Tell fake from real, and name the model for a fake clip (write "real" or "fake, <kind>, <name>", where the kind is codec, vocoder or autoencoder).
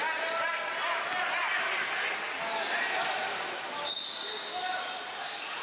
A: real